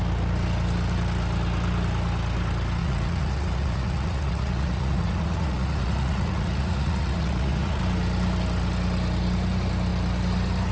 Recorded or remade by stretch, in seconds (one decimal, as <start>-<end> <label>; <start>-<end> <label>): 0.0-2.8 recorded; 2.8-7.8 remade; 7.8-10.7 recorded